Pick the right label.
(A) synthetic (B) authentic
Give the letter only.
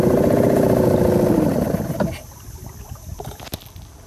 B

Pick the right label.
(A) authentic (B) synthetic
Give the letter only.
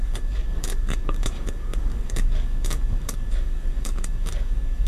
B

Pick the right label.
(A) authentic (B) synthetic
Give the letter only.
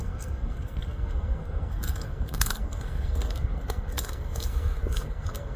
B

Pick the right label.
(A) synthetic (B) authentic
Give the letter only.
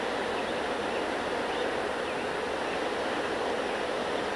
B